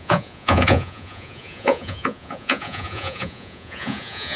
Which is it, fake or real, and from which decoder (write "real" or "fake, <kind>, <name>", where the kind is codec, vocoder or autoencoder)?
fake, vocoder, Vocos